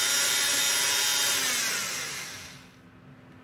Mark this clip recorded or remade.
recorded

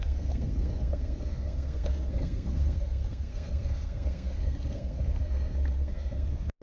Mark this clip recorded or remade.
remade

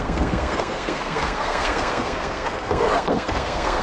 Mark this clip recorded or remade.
remade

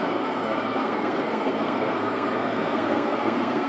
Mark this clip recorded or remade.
remade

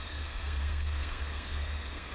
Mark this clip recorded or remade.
remade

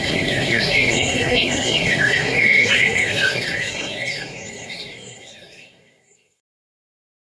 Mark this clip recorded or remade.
remade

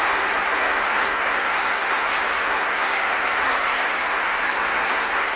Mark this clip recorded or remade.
remade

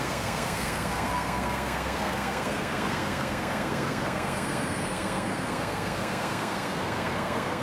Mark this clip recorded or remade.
remade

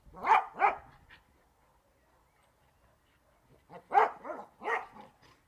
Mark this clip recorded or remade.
recorded